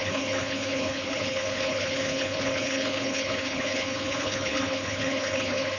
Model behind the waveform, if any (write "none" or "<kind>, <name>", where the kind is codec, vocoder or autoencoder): codec, HILCodec